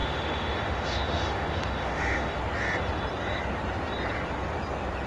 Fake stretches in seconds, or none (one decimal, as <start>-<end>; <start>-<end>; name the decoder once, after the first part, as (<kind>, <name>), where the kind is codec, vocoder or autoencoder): 0.0-2.4 (autoencoder, DAC-VAE)